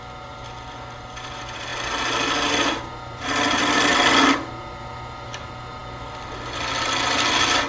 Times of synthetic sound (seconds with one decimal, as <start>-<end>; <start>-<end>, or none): none